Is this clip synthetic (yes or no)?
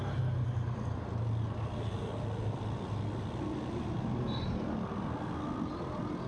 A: no